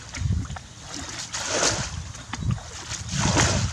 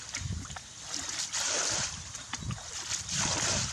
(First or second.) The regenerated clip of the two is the second